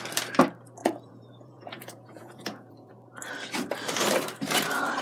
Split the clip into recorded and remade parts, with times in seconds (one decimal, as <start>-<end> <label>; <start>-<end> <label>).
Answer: 0.0-0.8 recorded; 0.8-2.9 remade; 2.9-5.0 recorded